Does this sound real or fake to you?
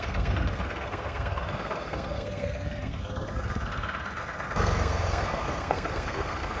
fake